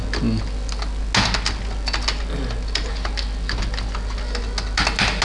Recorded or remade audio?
recorded